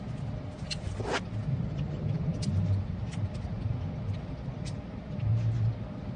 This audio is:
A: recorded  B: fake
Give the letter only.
A